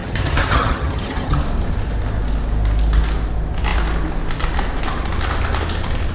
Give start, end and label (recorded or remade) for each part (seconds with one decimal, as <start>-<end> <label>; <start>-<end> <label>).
0.0-1.4 remade; 1.4-6.1 recorded